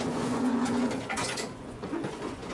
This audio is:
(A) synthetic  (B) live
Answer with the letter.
A